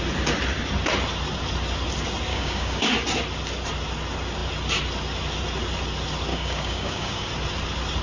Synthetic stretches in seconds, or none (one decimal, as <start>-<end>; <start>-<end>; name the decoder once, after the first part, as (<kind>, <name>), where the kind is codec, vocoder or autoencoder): 2.3-2.9 (codec, DAC); 6.3-7.3